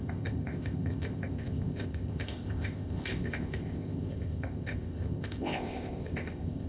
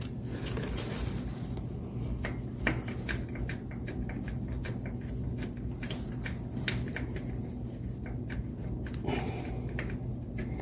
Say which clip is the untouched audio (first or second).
second